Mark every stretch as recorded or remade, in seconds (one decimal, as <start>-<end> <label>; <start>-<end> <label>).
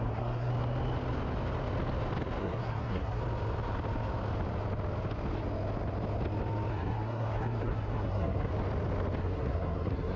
0.0-0.5 remade; 0.5-2.4 recorded; 2.4-3.2 remade; 3.2-6.7 recorded; 6.7-8.5 remade; 8.5-9.2 recorded; 9.2-10.2 remade